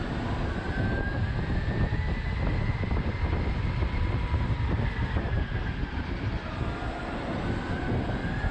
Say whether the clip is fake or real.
real